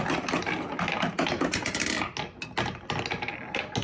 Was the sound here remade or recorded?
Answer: recorded